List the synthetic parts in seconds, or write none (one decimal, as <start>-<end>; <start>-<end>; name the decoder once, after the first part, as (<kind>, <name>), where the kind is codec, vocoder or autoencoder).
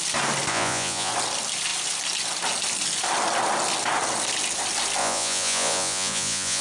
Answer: 0.5-1.1 (vocoder, Vocos); 5.0-6.6